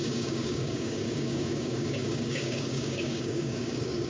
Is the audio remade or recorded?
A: remade